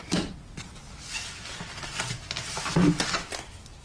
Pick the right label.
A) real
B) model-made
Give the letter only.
A